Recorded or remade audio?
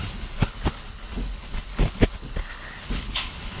remade